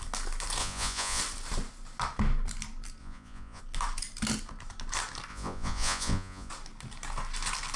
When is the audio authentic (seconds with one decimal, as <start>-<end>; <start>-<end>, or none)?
0.0-0.6; 1.2-3.0; 3.6-5.3; 6.5-7.8